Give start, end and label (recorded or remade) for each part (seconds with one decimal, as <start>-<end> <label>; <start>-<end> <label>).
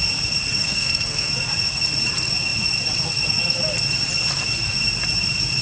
0.0-0.6 recorded; 0.6-1.3 remade; 1.3-5.6 recorded